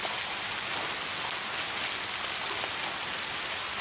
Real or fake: real